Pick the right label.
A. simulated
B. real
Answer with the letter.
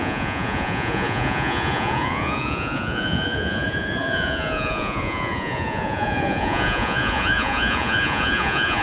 A